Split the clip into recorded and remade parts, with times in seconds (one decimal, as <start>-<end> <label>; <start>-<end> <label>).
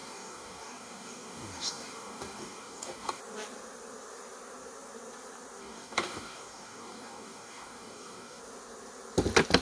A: 0.0-3.2 remade; 3.2-5.6 recorded; 5.6-8.4 remade; 8.4-9.6 recorded